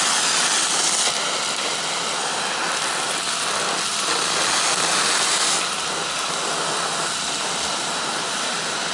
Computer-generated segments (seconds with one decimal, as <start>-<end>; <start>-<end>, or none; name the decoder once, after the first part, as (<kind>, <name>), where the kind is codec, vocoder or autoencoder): none